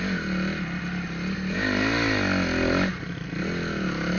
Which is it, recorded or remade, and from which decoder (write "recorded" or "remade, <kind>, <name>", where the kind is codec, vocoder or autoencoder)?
recorded